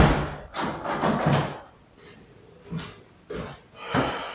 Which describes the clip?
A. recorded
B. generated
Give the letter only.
A